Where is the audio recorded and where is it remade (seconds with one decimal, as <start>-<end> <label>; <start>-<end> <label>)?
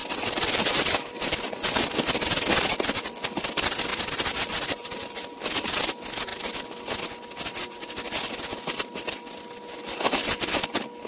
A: 0.0-1.4 remade; 1.4-3.9 recorded; 3.9-4.6 remade; 4.6-11.1 recorded